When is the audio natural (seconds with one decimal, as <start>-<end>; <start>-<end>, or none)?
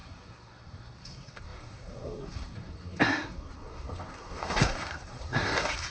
none